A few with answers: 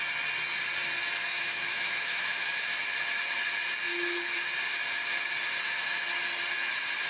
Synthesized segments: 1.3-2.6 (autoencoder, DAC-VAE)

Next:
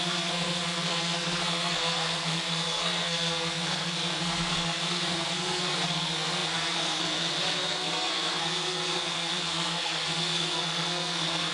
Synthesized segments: 0.0-11.5 (codec, SNAC)

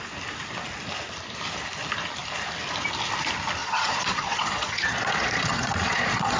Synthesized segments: 3.6-6.4 (vocoder, Vocos)

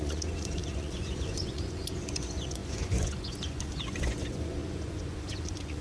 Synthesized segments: 0.0-5.8 (vocoder, Vocos)

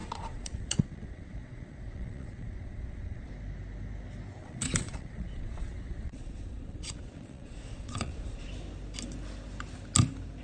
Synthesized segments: 0.0-3.3 (vocoder, Vocos); 4.4-8.5

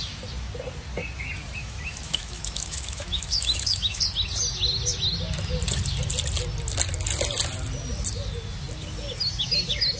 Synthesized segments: 1.6-4.0 (autoencoder, DAC-VAE)

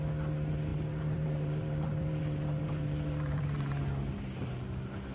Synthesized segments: 0.7-3.8 (vocoder, BigVGAN v2)